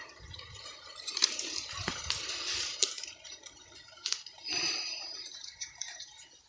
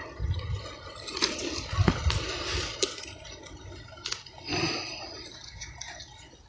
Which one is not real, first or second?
first